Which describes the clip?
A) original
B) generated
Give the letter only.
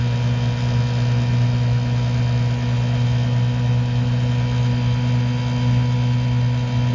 A